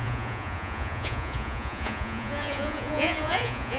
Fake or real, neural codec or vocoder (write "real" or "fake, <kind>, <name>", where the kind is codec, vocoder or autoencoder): fake, vocoder, Vocos